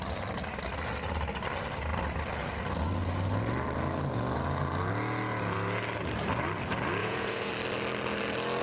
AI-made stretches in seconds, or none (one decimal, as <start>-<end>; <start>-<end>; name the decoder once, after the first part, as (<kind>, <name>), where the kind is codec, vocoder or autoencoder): 7.0-7.5 (vocoder, Vocos)